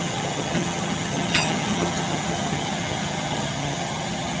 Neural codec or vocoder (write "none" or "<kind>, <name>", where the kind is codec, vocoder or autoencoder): vocoder, HiFi-GAN